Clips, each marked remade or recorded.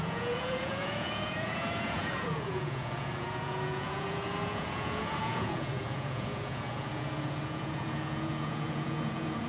remade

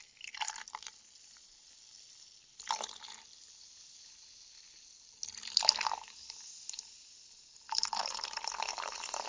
recorded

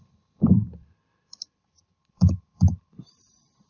remade